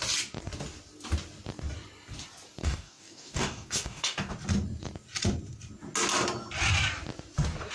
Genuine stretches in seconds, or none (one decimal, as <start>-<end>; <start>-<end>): 0.0-2.6; 4.3-7.7